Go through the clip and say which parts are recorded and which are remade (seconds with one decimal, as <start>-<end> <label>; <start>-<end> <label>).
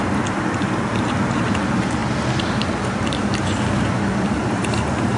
0.0-5.2 recorded